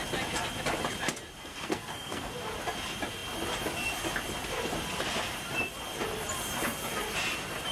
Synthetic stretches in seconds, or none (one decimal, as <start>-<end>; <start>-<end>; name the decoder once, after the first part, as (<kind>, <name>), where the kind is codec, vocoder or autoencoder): 1.5-2.3 (codec, SNAC)